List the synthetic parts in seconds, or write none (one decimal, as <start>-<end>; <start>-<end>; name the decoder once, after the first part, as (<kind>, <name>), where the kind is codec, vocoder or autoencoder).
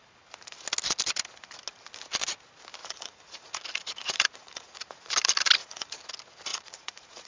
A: 2.8-5.1 (vocoder, Vocos); 5.6-6.1; 6.5-7.3